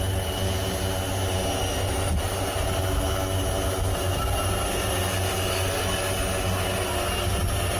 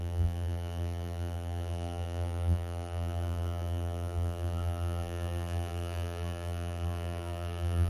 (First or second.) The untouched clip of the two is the first